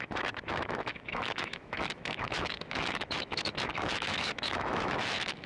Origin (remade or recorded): remade